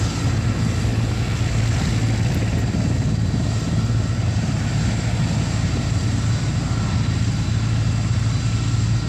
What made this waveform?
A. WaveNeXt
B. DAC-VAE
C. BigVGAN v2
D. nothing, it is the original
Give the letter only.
D